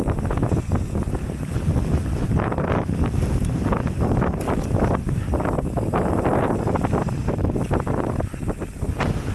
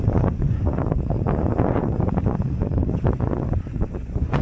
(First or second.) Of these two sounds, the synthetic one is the second